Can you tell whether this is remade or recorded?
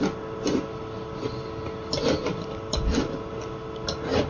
recorded